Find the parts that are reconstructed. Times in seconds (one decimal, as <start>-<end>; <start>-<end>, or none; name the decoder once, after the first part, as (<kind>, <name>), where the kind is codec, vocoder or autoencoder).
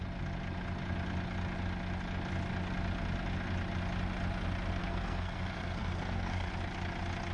4.8-6.5 (codec, SNAC)